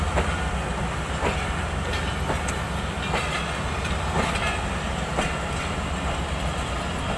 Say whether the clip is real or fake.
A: real